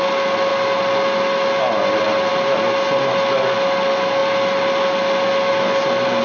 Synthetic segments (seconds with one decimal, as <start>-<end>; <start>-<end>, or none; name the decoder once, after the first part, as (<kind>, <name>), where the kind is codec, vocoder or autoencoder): none

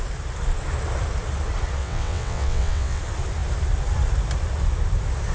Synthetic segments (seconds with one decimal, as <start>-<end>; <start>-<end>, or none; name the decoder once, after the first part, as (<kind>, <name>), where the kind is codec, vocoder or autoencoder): 1.8-3.0 (vocoder, WaveNeXt)

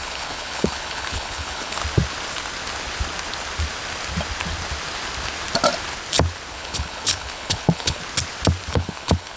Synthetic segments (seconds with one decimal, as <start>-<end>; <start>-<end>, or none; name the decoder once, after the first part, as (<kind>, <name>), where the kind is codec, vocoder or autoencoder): 0.0-1.8 (codec, HILCodec); 6.5-8.0; 8.7-9.4

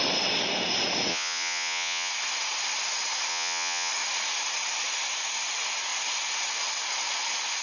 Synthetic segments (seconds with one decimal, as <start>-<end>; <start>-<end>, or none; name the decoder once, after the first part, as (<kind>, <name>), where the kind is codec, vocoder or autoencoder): 1.1-2.1 (vocoder, Vocos); 3.3-3.9